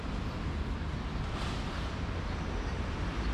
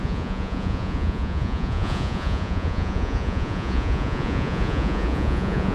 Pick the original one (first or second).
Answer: first